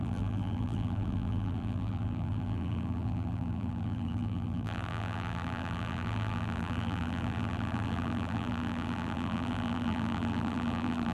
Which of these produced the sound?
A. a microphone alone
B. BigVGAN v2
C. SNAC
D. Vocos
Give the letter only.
B